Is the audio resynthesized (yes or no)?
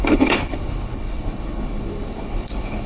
yes